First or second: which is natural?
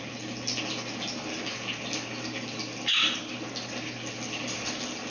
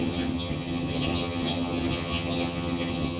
first